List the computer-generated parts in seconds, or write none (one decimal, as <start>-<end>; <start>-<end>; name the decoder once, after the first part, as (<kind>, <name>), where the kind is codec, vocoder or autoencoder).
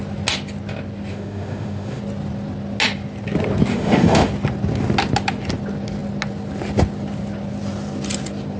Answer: 1.1-2.0 (autoencoder, DAC-VAE); 3.7-4.3